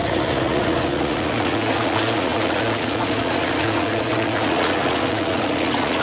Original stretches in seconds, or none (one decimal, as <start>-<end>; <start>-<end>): none